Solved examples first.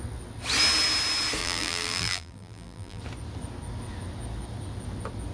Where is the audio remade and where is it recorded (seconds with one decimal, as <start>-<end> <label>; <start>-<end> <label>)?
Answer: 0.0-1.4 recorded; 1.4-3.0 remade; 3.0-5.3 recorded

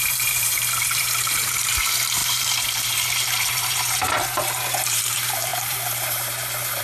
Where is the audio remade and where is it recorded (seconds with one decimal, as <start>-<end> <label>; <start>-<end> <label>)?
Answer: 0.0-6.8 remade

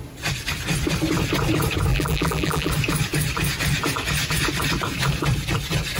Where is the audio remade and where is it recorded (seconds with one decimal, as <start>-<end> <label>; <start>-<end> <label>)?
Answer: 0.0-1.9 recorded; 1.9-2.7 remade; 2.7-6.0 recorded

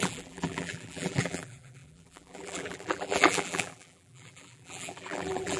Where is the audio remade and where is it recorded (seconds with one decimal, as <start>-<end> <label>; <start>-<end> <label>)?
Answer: 0.0-5.6 remade

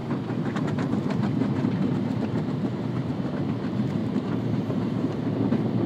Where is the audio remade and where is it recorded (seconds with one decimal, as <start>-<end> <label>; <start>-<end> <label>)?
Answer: 0.0-3.5 remade; 3.5-4.0 recorded; 4.0-5.2 remade; 5.2-5.9 recorded

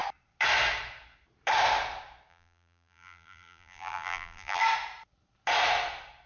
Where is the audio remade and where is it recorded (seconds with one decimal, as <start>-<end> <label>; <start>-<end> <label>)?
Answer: 0.0-2.3 recorded; 2.3-4.6 remade; 4.6-6.3 recorded